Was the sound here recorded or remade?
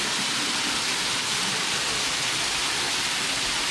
remade